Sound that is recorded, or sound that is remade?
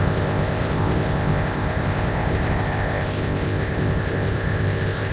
remade